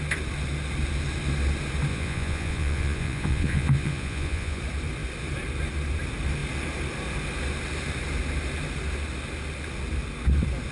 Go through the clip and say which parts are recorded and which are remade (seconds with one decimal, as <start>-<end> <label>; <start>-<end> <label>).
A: 0.0-1.9 recorded; 1.9-4.6 remade; 4.6-10.7 recorded